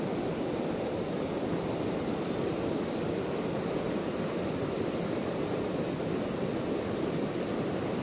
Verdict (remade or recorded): recorded